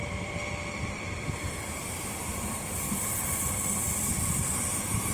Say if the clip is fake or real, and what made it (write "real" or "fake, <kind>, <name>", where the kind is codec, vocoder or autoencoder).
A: fake, vocoder, BigVGAN v2